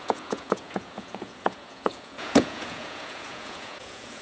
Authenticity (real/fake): fake